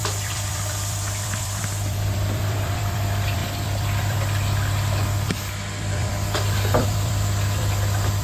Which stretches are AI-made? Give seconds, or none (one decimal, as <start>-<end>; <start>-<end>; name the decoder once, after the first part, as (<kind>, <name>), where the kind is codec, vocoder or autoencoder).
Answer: 0.0-8.2 (vocoder, BigVGAN v2)